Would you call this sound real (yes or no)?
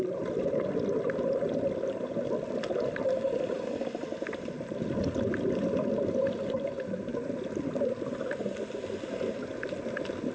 yes